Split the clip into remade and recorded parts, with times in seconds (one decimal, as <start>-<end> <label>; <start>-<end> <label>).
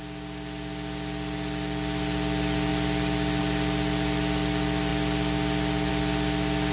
0.0-6.7 recorded